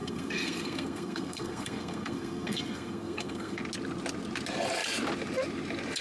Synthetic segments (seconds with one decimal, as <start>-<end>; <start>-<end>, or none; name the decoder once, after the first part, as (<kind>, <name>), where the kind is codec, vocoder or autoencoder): 0.0-3.6 (codec, SNAC)